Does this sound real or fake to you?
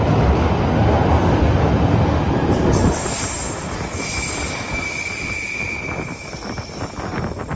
real